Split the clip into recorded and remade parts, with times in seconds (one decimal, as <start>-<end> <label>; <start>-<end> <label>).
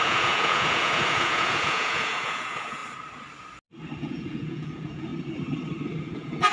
0.0-2.8 remade; 2.8-4.0 recorded; 4.0-5.1 remade; 5.1-6.0 recorded; 6.0-6.5 remade